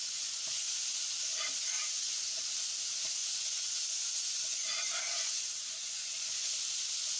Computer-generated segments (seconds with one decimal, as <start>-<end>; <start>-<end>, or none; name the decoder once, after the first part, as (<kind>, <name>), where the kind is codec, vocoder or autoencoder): 0.0-0.7 (vocoder, Vocos); 1.8-2.4; 3.2-6.7